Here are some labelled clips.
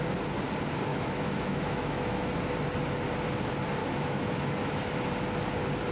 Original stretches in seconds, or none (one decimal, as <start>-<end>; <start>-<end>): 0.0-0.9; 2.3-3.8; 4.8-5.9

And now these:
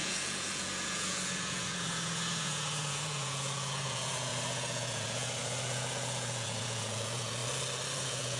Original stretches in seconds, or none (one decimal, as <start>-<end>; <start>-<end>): 7.4-8.0

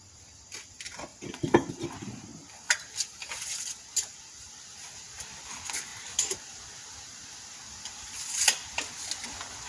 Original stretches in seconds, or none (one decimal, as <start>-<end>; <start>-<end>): 0.0-9.7